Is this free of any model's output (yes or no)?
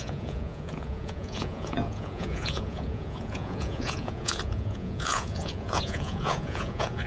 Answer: no